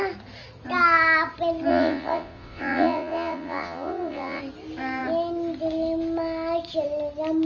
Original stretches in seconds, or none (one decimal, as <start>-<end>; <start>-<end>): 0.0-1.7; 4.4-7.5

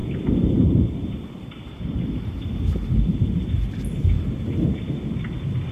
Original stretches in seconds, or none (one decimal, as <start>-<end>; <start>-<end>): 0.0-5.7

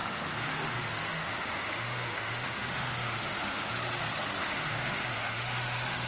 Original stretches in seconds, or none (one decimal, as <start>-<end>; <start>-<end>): 3.7-4.4